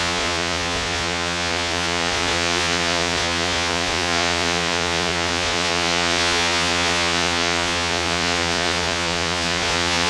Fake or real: fake